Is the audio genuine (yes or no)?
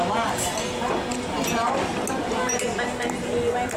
yes